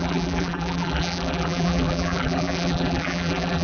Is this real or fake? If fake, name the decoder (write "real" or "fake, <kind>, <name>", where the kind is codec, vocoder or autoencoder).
fake, vocoder, BigVGAN v2